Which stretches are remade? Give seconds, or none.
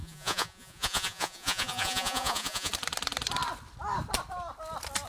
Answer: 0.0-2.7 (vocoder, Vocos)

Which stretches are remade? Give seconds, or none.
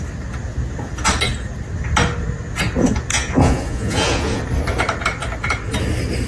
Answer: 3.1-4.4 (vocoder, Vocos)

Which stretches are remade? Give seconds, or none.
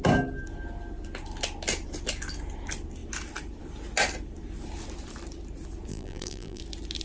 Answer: 5.9-6.6 (vocoder, BigVGAN v2)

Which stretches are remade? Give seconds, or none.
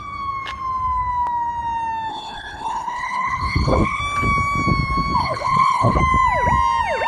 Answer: 2.1-4.0 (codec, HILCodec); 5.2-6.0